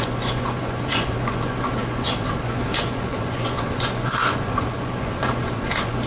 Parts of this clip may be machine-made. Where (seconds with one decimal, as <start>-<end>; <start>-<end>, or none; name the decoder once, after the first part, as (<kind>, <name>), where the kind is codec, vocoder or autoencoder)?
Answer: 0.0-6.1 (vocoder, Vocos)